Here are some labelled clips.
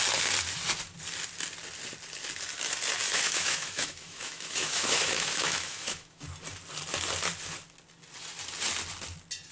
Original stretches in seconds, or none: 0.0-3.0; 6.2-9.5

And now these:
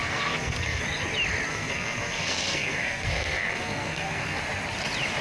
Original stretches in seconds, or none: 0.8-1.5; 4.4-5.2

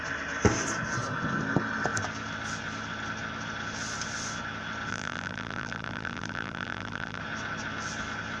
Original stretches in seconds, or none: 0.0-4.9; 7.2-8.4

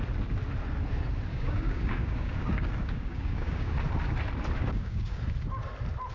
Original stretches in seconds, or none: 0.0-1.3; 3.7-4.6; 5.2-6.1

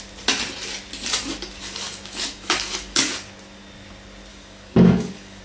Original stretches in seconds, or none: 0.0-1.6; 3.1-4.3